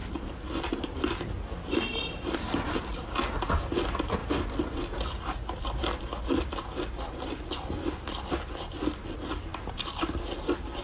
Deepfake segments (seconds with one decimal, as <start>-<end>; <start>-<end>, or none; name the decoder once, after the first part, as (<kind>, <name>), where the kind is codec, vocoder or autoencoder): 1.9-2.9 (vocoder, BigVGAN v2); 4.2-6.0; 9.5-10.2